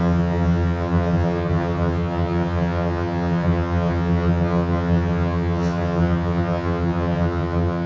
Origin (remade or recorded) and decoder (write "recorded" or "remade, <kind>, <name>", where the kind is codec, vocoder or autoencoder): remade, vocoder, HiFi-GAN